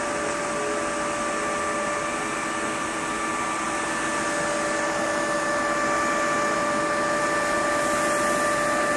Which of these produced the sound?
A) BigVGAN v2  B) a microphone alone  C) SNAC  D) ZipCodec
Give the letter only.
B